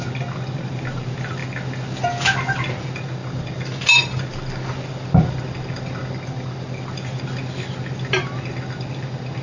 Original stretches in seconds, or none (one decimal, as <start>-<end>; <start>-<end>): 0.0-3.2; 7.2-9.4